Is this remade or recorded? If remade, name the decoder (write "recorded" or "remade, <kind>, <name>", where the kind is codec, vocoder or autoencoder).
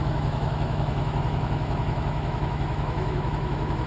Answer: remade, autoencoder, DAC-VAE